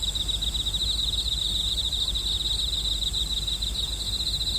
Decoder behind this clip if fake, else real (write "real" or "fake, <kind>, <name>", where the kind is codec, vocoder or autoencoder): real